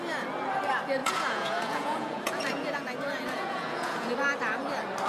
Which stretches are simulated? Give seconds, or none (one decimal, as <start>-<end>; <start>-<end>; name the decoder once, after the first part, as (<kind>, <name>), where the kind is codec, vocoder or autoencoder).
1.0-4.1 (vocoder, Vocos)